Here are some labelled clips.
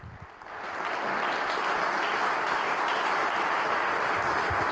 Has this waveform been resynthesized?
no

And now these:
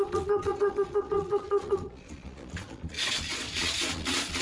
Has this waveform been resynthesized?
yes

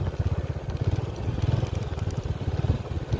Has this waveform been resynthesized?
no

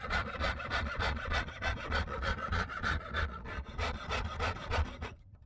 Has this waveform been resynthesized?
yes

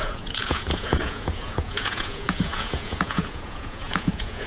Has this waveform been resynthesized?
yes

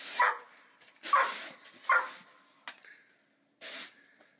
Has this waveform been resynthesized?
no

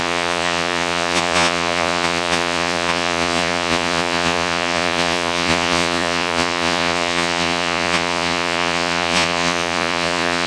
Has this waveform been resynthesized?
yes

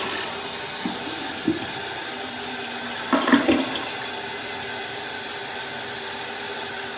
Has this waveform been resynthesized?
no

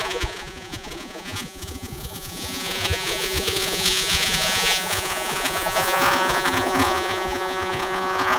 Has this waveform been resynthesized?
yes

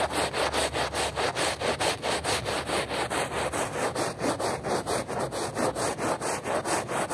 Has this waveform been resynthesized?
no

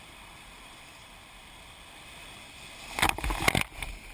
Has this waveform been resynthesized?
no